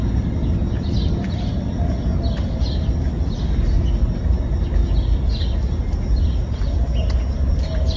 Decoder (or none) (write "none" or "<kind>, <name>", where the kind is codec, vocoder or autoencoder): none